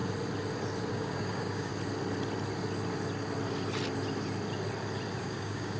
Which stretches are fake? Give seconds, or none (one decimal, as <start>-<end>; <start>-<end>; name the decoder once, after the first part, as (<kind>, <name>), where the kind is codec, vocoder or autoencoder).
0.9-1.7 (codec, DAC); 5.2-5.8